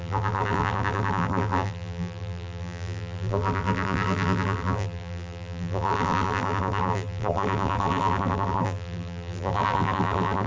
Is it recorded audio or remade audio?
remade